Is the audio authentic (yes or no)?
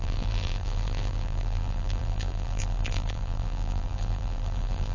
no